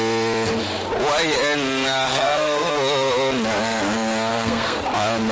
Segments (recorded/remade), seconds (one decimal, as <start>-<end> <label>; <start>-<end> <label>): 0.0-2.1 recorded; 2.1-2.7 remade; 2.7-4.3 recorded; 4.3-4.8 remade; 4.8-5.3 recorded